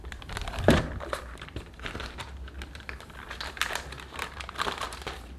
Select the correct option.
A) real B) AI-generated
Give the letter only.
A